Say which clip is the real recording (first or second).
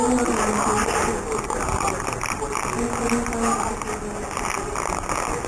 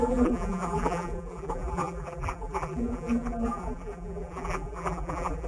first